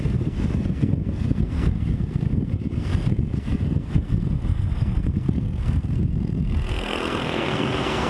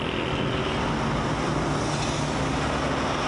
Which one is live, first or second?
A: second